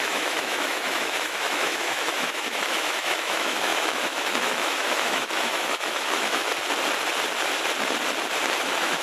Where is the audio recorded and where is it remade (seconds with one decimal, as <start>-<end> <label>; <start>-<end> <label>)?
0.0-6.5 remade; 6.5-8.6 recorded; 8.6-9.0 remade